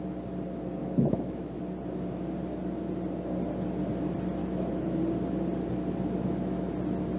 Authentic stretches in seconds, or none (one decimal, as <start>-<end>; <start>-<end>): 0.0-0.8; 1.6-4.4; 5.0-7.2